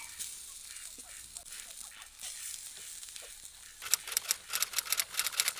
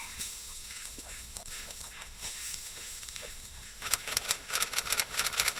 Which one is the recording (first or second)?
first